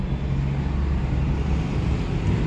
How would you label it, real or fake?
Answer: real